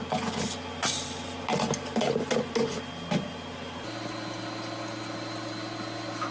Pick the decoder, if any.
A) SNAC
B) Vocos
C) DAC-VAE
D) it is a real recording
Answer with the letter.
D